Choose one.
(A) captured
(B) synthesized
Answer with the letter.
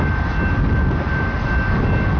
A